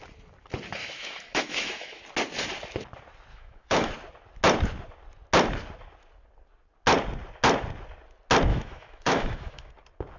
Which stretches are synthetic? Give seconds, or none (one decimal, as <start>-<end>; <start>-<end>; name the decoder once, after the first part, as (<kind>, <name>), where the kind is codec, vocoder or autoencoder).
0.8-2.0 (autoencoder, DAC-VAE); 3.3-3.9; 8.5-9.7